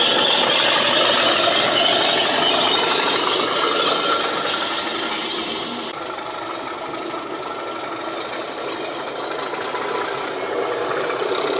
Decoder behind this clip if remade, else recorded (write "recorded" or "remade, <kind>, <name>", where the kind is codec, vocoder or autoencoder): recorded